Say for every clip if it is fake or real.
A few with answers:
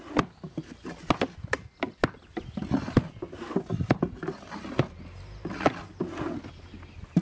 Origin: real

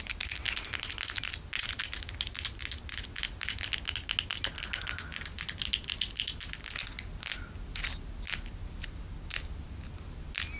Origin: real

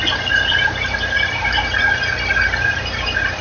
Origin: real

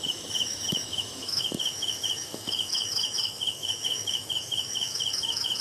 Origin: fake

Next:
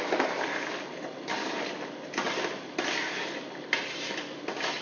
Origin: real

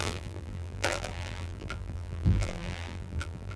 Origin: fake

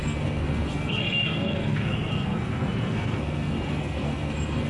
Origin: fake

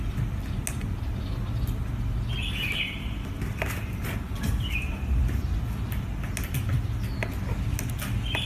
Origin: real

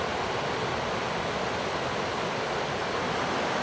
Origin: real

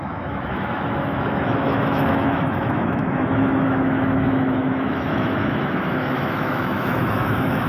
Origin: fake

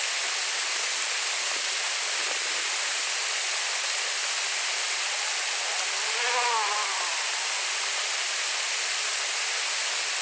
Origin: real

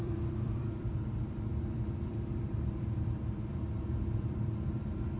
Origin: fake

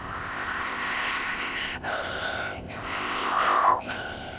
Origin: fake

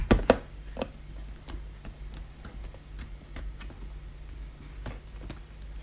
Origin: real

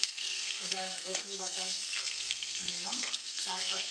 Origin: fake